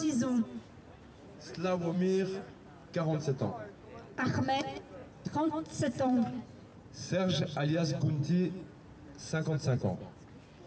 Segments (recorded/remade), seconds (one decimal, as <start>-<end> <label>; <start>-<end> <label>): 0.0-2.8 remade; 2.8-4.6 recorded; 4.6-6.7 remade; 6.7-8.5 recorded; 8.5-10.7 remade